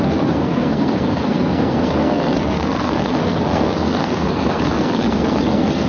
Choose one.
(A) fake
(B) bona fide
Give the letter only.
A